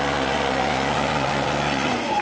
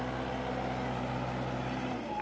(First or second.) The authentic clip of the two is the second